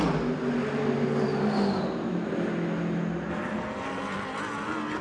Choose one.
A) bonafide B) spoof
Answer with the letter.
A